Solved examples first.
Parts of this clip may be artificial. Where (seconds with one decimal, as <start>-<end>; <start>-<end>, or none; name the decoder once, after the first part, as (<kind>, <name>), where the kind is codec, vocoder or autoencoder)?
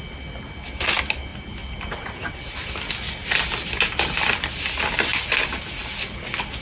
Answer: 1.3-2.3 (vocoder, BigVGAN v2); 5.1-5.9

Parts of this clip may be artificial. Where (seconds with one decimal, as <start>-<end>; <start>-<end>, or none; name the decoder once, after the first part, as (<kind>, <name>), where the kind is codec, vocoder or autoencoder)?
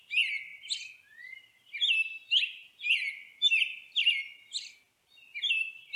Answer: none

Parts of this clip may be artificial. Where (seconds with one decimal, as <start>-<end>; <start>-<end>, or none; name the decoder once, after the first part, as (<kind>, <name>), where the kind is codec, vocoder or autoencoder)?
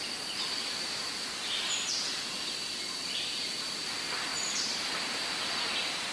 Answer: none